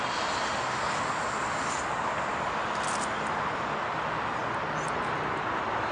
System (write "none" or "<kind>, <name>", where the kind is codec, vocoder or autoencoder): none